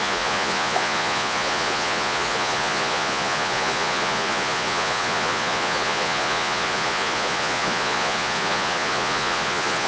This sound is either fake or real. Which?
fake